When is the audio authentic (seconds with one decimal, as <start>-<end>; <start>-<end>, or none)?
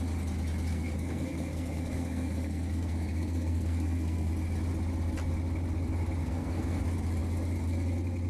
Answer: 0.0-0.7; 4.3-6.2; 6.8-8.3